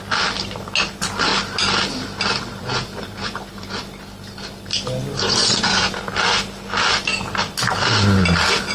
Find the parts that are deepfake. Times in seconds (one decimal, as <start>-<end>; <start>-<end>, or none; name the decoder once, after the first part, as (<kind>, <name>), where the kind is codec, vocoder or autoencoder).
5.4-6.0 (vocoder, Vocos)